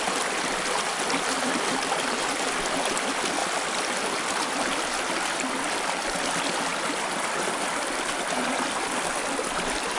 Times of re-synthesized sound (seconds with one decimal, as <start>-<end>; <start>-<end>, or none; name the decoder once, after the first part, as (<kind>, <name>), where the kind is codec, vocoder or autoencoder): none